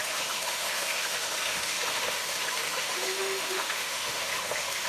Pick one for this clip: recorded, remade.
remade